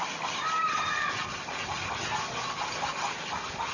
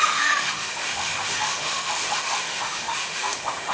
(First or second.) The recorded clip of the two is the first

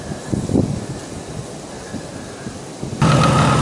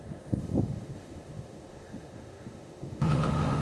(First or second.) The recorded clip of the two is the first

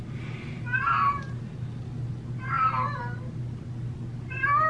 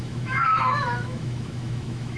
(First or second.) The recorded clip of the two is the first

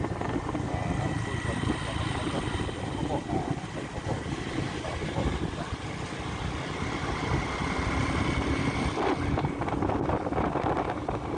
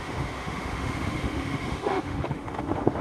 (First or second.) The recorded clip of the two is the first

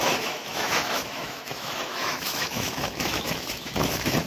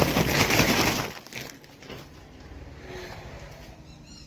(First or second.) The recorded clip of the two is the second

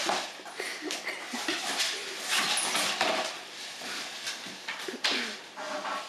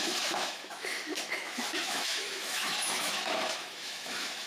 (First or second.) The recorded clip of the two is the first